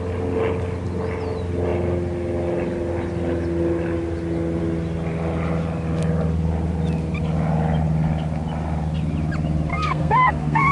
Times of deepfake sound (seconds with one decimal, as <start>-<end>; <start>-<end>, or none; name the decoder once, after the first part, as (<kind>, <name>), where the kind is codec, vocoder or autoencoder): 9.7-10.7 (codec, SNAC)

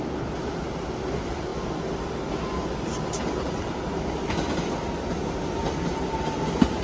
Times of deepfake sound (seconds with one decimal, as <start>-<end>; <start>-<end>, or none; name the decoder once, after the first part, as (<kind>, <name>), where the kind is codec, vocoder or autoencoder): none

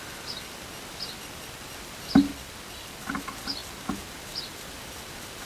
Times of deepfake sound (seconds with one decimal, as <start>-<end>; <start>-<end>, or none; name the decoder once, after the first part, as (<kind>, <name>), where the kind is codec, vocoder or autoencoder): none

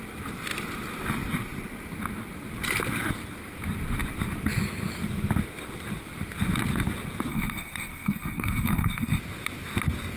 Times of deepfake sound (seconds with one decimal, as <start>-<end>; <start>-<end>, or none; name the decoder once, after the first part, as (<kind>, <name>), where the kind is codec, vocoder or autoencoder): 7.3-9.2 (codec, SNAC)